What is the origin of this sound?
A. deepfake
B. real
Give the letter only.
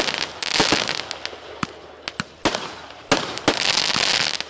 B